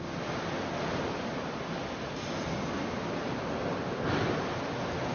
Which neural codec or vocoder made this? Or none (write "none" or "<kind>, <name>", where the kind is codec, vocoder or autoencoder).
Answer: none